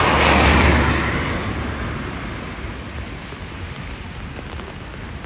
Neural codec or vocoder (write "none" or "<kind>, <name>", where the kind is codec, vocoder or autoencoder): none